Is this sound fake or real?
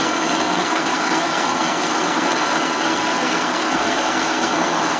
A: fake